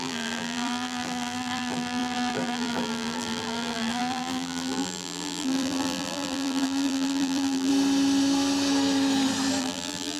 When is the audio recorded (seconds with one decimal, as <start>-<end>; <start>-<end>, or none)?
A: 7.7-9.6